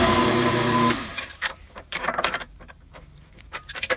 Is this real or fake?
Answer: fake